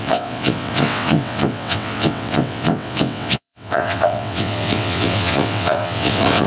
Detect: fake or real fake